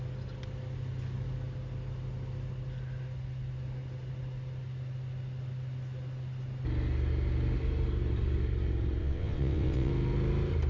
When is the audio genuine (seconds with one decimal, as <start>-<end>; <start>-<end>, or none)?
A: 0.0-9.0; 9.9-10.7